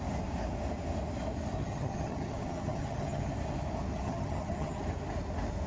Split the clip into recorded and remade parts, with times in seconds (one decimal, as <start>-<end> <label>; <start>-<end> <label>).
0.0-1.6 recorded; 1.6-3.3 remade; 3.3-3.9 recorded; 3.9-4.8 remade; 4.8-5.7 recorded